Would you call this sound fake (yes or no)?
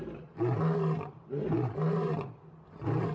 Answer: no